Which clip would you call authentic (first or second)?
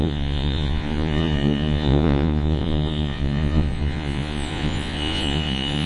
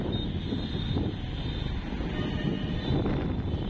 second